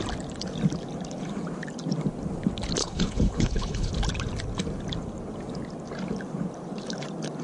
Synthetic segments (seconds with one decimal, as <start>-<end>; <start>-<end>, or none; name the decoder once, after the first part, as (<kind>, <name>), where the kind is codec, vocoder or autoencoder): 2.8-3.9 (codec, HILCodec)